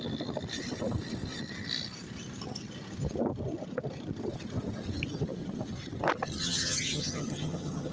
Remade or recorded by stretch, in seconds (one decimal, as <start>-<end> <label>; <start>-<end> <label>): 0.0-6.4 recorded; 6.4-7.9 remade